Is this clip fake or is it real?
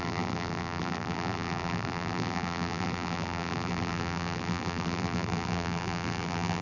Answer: fake